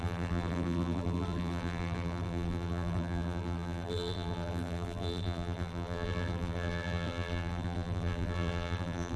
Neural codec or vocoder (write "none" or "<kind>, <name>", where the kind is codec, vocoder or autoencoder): vocoder, BigVGAN v2